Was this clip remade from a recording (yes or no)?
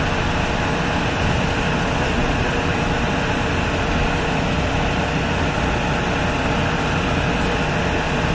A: no